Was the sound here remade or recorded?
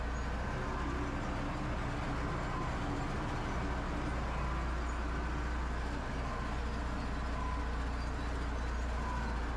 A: recorded